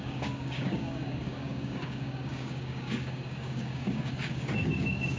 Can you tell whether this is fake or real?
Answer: fake